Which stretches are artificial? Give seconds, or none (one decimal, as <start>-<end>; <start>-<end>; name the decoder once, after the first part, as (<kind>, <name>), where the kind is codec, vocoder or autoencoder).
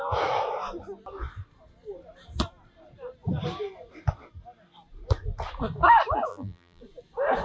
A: 6.3-6.8 (vocoder, BigVGAN v2)